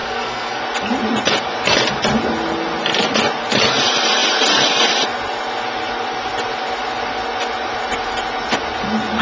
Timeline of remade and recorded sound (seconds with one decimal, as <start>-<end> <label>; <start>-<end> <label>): 0.0-0.6 remade; 0.6-9.2 recorded